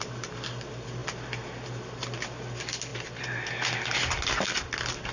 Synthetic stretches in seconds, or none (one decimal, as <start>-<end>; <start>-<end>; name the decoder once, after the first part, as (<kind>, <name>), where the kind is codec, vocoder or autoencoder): none

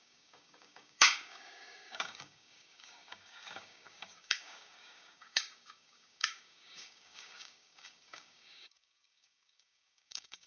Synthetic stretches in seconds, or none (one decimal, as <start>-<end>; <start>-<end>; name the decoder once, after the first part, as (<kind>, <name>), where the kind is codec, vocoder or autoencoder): 0.0-10.5 (codec, DAC)